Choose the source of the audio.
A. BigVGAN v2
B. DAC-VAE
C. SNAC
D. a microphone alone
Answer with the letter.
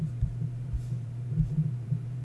A